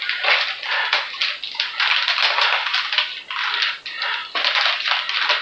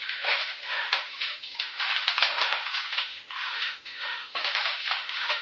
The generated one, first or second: second